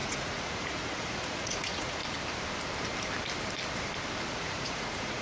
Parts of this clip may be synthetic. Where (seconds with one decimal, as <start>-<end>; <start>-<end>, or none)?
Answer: 0.0-2.0; 4.3-5.2